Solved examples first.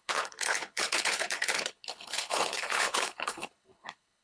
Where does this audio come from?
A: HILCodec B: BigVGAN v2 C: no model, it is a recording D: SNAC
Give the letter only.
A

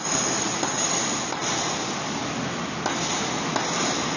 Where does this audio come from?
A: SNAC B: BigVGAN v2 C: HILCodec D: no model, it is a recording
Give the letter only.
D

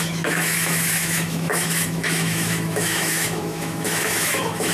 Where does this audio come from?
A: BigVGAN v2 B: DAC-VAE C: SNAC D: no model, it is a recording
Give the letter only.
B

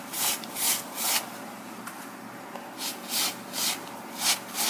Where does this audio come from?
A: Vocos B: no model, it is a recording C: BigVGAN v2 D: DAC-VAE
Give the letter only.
B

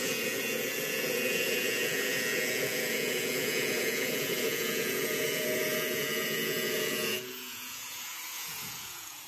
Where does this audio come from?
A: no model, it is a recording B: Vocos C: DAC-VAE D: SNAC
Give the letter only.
B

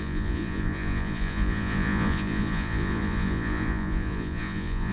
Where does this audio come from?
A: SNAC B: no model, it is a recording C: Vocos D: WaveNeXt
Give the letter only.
C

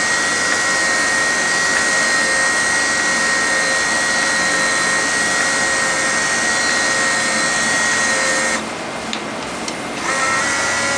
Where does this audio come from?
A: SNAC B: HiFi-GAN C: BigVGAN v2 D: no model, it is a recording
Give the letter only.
D